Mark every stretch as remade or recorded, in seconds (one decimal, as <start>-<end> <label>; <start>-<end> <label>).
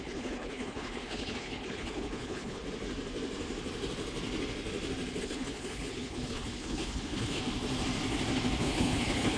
0.0-2.6 remade; 2.6-5.2 recorded; 5.2-7.4 remade; 7.4-8.6 recorded; 8.6-9.4 remade